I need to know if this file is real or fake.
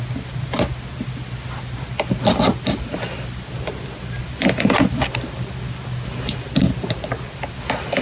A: real